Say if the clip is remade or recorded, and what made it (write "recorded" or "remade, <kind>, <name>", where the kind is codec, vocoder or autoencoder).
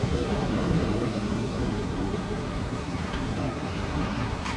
remade, codec, SNAC